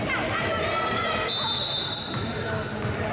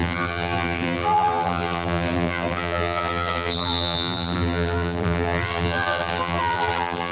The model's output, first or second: second